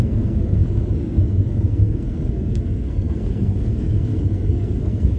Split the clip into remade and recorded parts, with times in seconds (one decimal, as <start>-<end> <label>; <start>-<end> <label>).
0.0-5.2 remade